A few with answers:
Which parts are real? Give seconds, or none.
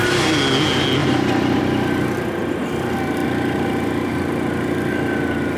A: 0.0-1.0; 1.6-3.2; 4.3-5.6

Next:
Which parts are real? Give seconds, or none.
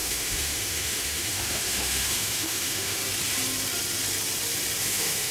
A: 3.0-4.8